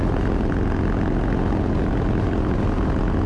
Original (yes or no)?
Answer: yes